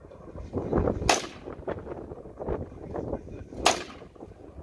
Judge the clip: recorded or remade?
recorded